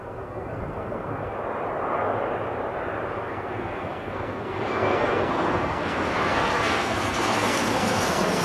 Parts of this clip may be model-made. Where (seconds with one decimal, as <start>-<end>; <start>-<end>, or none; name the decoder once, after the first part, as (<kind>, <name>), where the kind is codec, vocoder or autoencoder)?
0.0-1.4 (codec, SNAC); 3.2-8.4